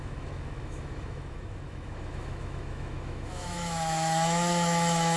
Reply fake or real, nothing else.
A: fake